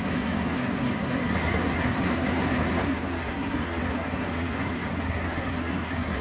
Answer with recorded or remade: remade